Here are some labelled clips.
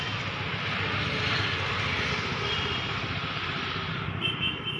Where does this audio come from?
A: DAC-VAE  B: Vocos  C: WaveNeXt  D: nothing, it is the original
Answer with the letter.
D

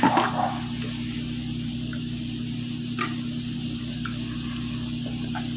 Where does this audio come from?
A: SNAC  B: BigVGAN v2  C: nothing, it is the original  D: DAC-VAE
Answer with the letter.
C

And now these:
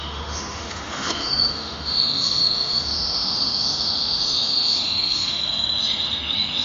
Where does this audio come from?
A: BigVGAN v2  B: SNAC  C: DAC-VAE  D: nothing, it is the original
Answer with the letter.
C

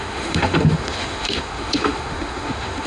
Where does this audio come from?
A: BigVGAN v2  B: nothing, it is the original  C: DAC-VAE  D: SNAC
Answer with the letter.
C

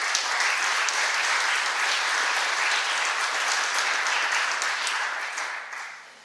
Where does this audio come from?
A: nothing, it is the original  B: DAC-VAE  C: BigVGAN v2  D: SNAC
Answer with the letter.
A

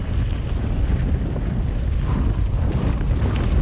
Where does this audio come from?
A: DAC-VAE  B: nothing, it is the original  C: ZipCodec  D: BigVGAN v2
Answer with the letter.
B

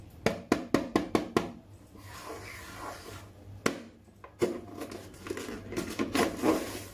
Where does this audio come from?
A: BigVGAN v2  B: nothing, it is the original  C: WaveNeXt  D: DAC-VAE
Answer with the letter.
B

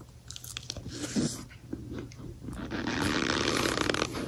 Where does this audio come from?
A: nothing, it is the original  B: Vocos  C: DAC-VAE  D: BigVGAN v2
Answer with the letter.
A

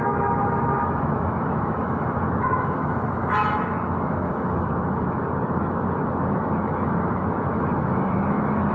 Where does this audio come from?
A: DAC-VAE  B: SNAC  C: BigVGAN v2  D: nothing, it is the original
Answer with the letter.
A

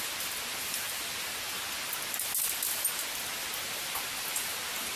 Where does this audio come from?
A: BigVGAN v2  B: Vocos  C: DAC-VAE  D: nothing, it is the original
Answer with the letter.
D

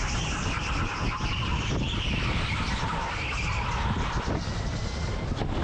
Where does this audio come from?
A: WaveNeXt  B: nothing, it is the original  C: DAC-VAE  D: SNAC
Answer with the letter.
B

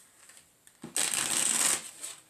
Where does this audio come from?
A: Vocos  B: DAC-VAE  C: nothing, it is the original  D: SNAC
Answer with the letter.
C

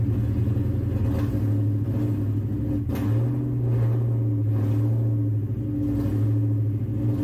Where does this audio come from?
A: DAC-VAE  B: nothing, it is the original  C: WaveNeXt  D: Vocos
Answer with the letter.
B